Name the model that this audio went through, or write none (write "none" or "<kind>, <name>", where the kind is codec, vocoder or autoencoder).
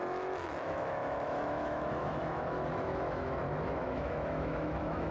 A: autoencoder, DAC-VAE